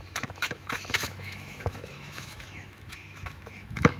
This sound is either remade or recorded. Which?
remade